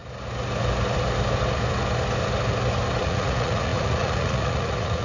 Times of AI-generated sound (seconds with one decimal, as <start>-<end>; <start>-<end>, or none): 3.0-5.0